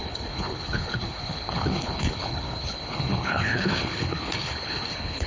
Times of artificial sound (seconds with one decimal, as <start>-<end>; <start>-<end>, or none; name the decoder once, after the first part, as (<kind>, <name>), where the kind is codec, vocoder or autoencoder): 0.0-5.3 (codec, HILCodec)